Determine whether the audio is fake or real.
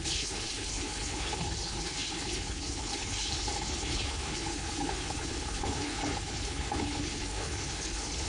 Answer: fake